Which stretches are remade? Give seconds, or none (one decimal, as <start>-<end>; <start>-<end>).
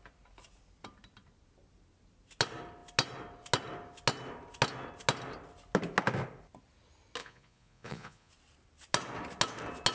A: 7.2-8.3